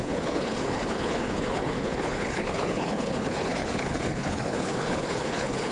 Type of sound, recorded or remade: remade